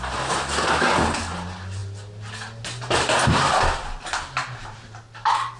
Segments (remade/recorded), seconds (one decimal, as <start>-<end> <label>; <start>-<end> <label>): 0.0-5.6 recorded